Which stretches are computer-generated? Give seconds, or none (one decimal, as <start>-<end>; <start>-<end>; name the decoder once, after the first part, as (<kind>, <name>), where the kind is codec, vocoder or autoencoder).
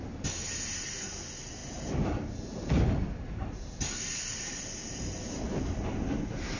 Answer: none